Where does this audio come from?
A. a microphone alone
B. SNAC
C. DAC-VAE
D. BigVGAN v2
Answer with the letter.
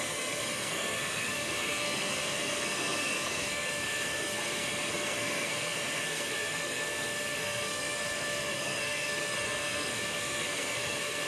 B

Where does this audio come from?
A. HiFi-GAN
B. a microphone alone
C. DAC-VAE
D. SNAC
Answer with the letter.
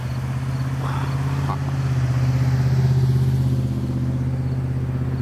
B